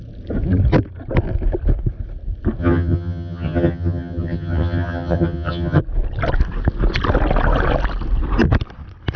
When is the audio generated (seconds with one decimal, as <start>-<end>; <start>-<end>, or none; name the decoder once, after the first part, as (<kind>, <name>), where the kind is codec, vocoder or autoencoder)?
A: 2.6-5.8 (vocoder, HiFi-GAN)